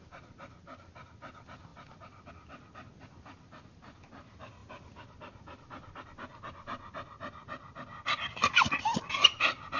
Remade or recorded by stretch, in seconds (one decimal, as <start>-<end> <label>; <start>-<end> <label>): 0.0-9.8 recorded